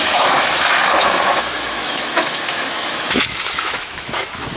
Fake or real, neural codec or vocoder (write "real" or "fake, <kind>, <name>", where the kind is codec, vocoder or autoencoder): fake, autoencoder, DAC-VAE